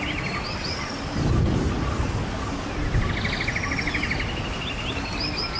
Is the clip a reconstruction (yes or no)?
no